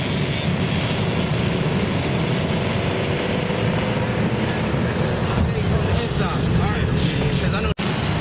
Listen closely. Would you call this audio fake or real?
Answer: real